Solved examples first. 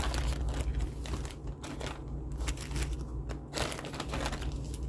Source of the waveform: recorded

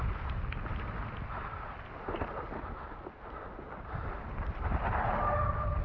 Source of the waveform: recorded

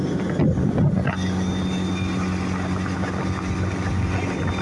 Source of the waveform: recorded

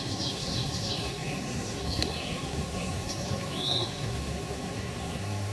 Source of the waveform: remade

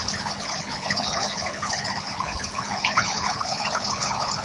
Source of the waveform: remade